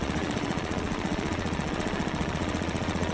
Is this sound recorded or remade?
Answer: remade